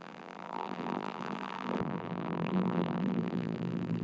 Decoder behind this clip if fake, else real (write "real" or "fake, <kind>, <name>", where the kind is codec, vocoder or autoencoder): fake, vocoder, BigVGAN v2